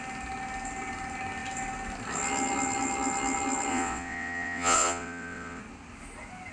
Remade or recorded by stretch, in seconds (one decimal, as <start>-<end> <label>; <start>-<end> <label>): 0.0-3.7 recorded; 3.7-5.6 remade; 5.6-6.5 recorded